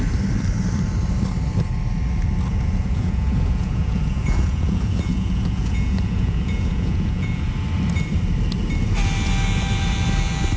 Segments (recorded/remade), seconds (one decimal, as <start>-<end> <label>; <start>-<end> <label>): 0.0-2.5 recorded; 2.5-7.5 remade; 7.5-10.6 recorded